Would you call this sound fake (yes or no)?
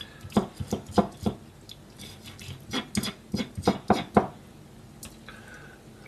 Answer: no